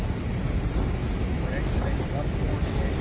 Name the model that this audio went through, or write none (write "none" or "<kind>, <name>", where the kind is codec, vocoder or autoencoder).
none